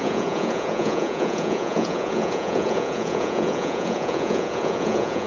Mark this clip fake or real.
fake